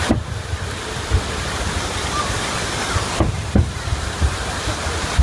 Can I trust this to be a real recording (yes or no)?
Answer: no